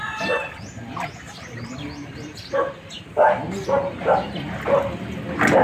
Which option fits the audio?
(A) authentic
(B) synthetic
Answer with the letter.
A